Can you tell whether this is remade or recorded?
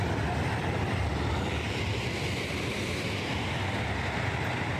recorded